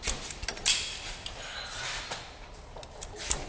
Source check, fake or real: real